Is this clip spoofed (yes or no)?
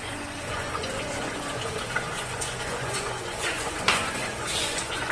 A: yes